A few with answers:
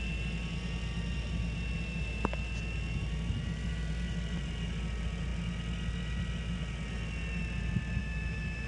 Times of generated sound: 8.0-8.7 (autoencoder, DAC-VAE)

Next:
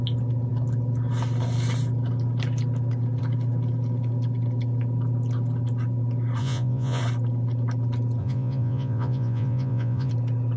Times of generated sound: 6.4-7.0 (vocoder, Vocos); 8.2-10.1